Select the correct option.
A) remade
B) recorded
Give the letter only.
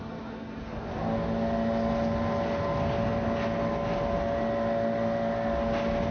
B